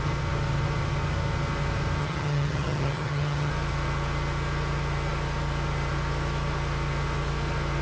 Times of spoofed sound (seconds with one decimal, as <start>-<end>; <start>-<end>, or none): 2.0-3.5